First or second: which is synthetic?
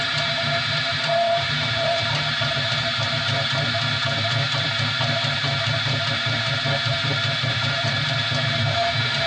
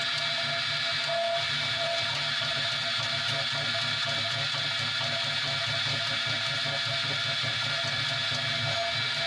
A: first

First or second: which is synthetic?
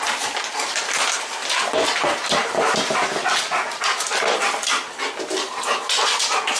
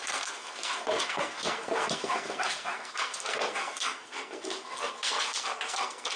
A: second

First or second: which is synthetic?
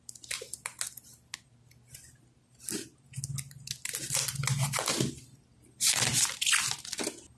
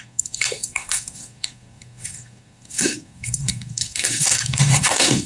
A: second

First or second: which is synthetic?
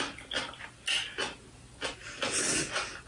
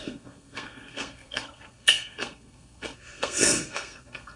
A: second